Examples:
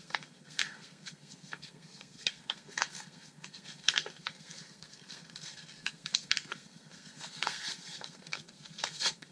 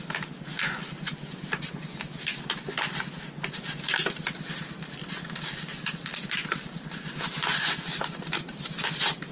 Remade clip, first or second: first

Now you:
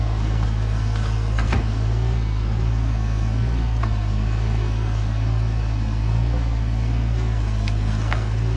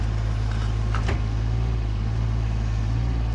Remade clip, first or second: first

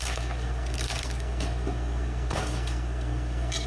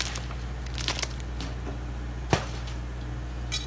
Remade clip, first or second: first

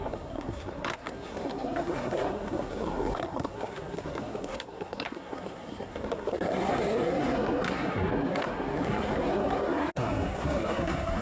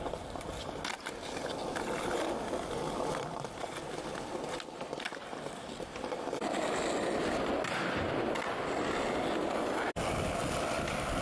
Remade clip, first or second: first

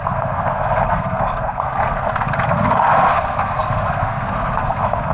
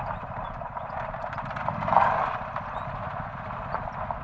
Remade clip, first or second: first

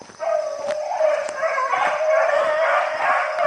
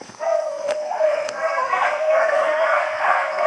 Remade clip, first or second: second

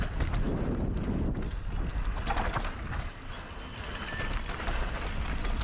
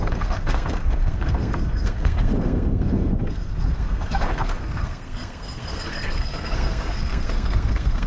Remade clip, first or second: second